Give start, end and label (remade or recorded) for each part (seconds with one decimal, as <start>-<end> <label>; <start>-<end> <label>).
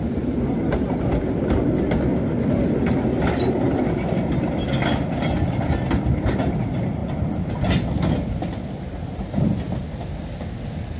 0.0-11.0 recorded